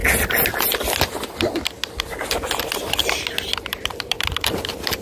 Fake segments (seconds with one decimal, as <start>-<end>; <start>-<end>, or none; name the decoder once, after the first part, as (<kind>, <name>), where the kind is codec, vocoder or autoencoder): 3.0-5.0 (vocoder, BigVGAN v2)